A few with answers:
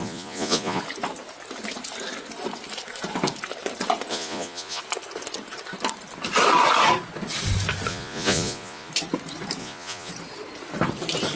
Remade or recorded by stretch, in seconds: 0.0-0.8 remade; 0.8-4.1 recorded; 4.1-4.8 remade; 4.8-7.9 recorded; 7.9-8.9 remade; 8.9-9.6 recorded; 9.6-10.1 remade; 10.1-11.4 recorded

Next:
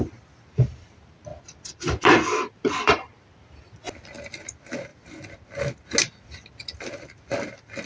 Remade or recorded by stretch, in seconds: 0.0-1.3 recorded; 1.3-3.6 remade; 3.6-7.9 recorded

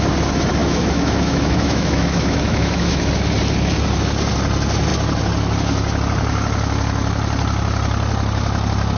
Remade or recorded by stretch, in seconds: 0.0-0.6 recorded; 0.6-3.1 remade; 3.1-9.0 recorded

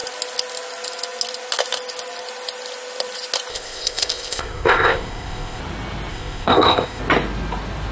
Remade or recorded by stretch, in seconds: 0.0-3.5 recorded; 3.5-5.6 remade; 5.6-6.1 recorded; 6.1-7.0 remade; 7.0-7.9 recorded